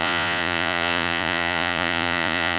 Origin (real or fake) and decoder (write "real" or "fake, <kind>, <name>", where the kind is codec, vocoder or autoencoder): fake, vocoder, Vocos